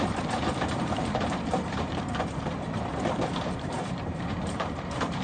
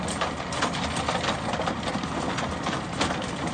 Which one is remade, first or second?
first